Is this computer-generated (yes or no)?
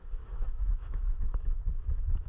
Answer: yes